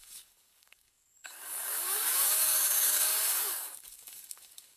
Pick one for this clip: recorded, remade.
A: remade